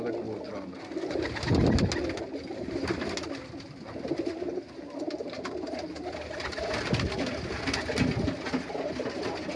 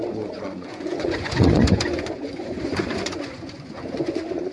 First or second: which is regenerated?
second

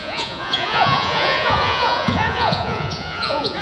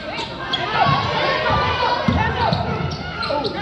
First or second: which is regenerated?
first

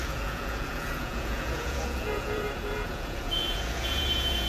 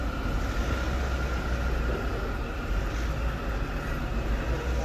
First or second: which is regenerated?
first